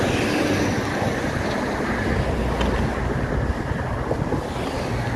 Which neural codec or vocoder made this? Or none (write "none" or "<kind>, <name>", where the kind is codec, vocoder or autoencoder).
none